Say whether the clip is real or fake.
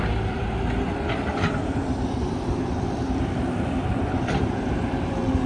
fake